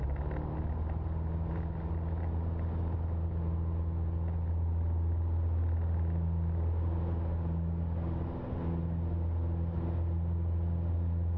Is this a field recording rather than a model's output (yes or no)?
yes